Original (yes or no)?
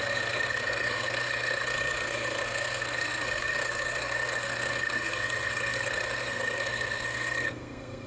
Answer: no